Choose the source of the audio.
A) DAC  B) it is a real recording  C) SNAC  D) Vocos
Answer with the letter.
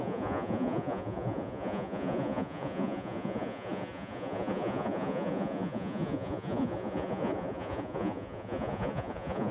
D